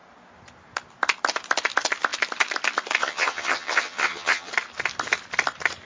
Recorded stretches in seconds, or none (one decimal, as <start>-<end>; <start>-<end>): 0.0-3.0; 4.5-5.8